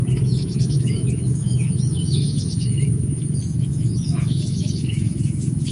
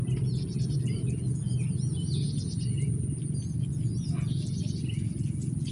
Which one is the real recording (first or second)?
second